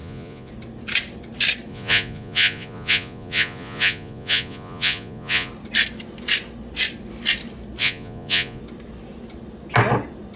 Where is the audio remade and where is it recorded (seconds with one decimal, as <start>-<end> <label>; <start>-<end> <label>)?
0.0-0.5 remade; 0.5-1.7 recorded; 1.7-5.5 remade; 5.5-7.8 recorded; 7.8-8.6 remade; 8.6-10.4 recorded